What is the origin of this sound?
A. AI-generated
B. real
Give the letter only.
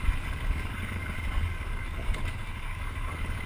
A